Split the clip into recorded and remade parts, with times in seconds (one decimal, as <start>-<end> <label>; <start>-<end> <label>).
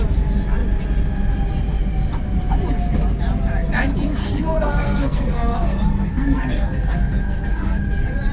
0.0-4.2 recorded; 4.2-7.8 remade; 7.8-8.3 recorded